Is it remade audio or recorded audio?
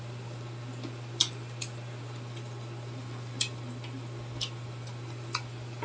recorded